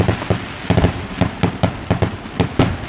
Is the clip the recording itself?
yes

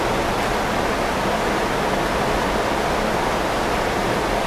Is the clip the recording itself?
yes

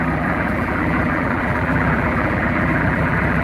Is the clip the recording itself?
no